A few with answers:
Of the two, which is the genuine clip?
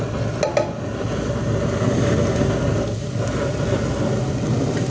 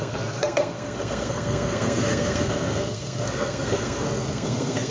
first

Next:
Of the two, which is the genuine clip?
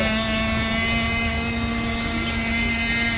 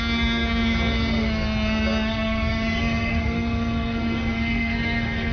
first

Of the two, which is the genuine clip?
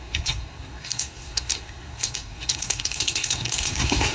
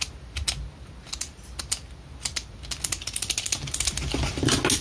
second